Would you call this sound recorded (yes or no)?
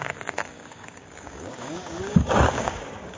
no